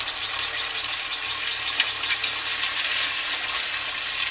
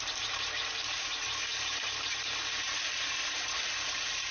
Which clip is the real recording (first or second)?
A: first